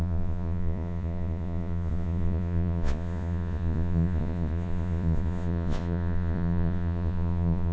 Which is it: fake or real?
fake